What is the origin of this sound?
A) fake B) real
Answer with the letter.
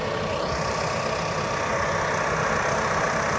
B